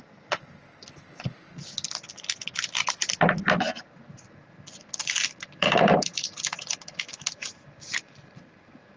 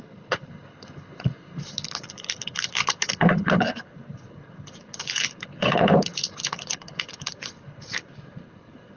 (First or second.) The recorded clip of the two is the first